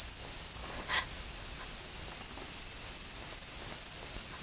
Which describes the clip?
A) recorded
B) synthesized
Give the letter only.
A